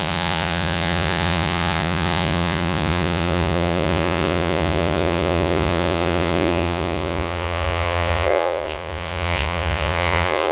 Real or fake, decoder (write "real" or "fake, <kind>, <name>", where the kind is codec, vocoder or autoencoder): fake, vocoder, Vocos